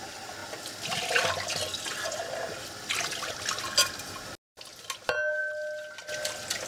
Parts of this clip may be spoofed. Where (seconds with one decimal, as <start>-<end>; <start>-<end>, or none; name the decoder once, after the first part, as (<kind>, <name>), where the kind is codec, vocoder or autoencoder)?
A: none